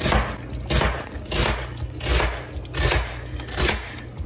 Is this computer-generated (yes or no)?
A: no